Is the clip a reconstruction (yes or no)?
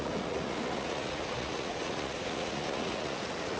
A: yes